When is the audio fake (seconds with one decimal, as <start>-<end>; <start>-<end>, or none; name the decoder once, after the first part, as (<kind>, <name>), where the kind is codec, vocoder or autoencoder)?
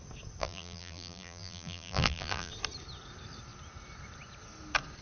0.4-2.5 (vocoder, BigVGAN v2)